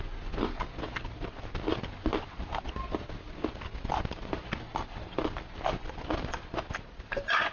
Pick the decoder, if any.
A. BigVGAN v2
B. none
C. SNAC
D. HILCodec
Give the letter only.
B